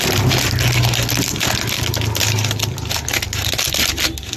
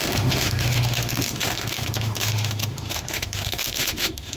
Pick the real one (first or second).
first